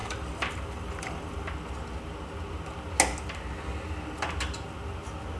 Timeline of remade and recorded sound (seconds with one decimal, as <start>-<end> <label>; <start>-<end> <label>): 0.0-1.5 remade; 1.5-5.4 recorded